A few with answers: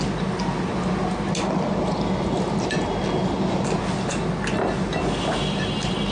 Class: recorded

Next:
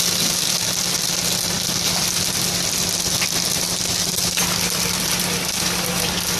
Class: recorded